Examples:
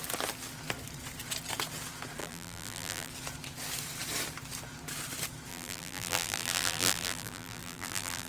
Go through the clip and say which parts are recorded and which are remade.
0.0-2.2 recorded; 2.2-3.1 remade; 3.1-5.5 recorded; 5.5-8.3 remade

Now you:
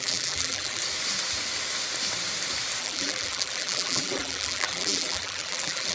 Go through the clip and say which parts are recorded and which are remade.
0.0-0.8 remade; 0.8-2.8 recorded; 2.8-5.9 remade

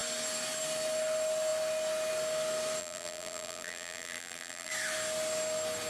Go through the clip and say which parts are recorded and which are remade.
0.0-2.8 recorded; 2.8-4.7 remade; 4.7-5.9 recorded